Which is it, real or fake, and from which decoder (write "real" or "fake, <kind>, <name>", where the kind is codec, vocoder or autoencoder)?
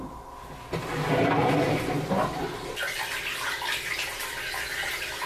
real